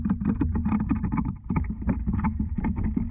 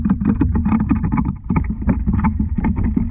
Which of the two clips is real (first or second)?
first